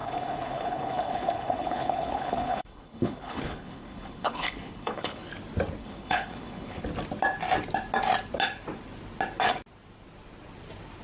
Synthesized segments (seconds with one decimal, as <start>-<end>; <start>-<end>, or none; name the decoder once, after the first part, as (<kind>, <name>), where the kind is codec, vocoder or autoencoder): 0.0-5.3 (codec, HILCodec); 5.8-6.8